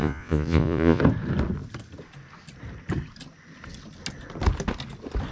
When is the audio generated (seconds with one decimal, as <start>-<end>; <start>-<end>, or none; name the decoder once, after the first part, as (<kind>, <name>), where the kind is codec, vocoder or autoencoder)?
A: 0.0-1.0 (vocoder, Vocos)